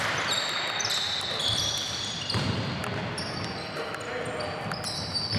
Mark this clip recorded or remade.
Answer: recorded